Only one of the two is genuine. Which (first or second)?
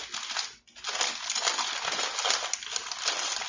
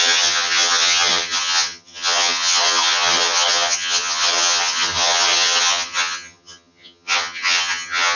first